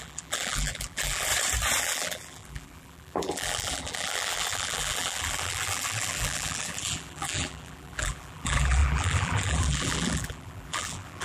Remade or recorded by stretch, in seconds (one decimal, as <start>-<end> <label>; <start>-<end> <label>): 0.0-1.3 remade; 1.3-1.8 recorded; 1.8-11.2 remade